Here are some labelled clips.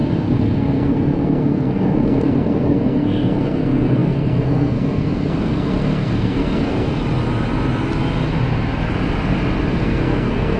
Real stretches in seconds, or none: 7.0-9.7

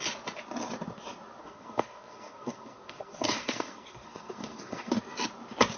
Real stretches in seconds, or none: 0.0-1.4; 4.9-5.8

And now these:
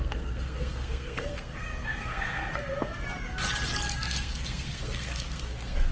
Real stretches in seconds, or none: 2.4-3.9